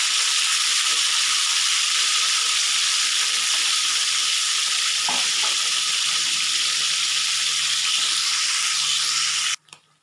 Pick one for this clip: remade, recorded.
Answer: remade